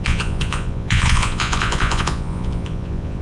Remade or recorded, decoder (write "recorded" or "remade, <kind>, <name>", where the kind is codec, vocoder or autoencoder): remade, vocoder, Vocos